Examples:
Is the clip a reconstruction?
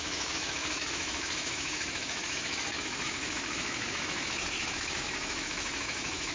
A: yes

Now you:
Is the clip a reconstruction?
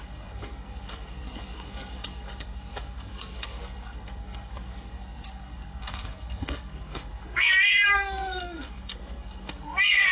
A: yes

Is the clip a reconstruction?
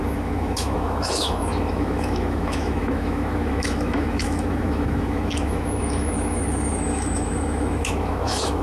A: yes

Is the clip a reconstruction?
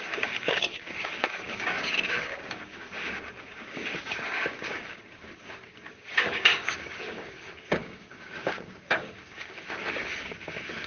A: yes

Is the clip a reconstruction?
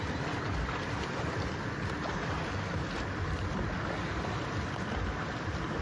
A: no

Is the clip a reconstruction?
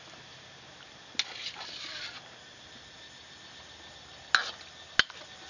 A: no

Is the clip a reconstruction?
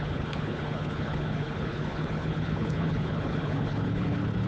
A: yes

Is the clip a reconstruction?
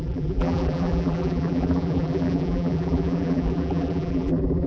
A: yes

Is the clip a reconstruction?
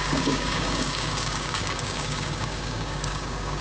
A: yes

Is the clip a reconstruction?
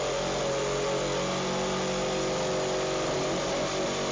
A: no